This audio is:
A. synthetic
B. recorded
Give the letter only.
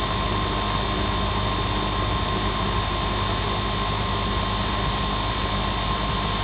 B